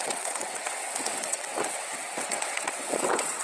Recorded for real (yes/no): no